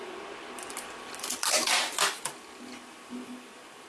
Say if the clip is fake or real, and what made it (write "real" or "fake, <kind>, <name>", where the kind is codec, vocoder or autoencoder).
real